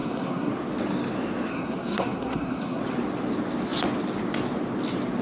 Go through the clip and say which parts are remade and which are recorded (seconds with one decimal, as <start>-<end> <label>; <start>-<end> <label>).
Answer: 0.0-0.5 remade; 0.5-1.5 recorded; 1.5-2.8 remade; 2.8-5.2 recorded